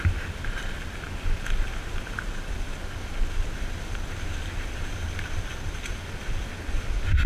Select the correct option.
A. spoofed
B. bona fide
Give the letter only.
B